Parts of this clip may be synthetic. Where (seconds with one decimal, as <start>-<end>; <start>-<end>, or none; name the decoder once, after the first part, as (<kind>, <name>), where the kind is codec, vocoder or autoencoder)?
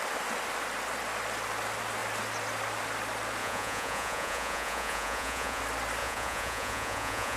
3.4-5.6 (vocoder, Vocos); 6.0-7.4